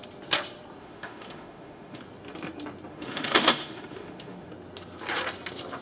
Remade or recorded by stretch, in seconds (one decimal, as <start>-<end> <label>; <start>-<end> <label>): 0.0-0.8 recorded; 0.8-2.0 remade; 2.0-2.9 recorded; 2.9-4.5 remade; 4.5-5.8 recorded

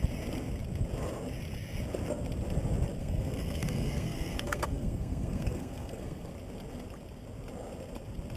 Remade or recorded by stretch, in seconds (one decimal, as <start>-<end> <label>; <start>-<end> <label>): 0.0-3.0 recorded; 3.0-6.3 remade; 6.3-8.4 recorded

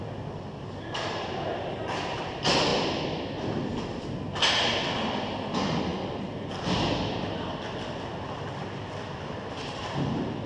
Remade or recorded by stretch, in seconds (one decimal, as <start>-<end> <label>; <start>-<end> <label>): 0.0-10.5 recorded

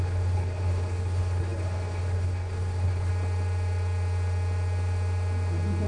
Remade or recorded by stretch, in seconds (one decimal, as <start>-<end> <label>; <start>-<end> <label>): 0.0-3.1 remade; 3.1-5.9 recorded

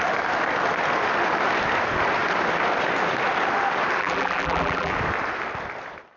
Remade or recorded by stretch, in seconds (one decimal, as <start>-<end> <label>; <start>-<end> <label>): 0.0-4.0 recorded; 4.0-4.9 remade; 4.9-6.2 recorded

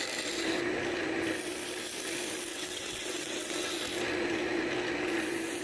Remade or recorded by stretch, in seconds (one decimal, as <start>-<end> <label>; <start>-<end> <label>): 0.0-2.5 recorded; 2.5-3.7 remade; 3.7-5.6 recorded

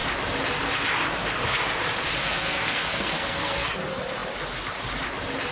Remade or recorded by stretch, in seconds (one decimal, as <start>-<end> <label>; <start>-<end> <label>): 0.0-2.2 recorded; 2.2-3.8 remade; 3.8-5.5 recorded